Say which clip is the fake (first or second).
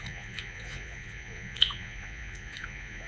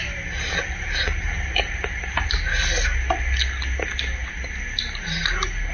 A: first